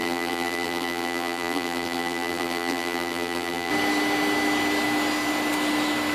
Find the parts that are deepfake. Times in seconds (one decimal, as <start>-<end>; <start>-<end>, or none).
0.0-3.7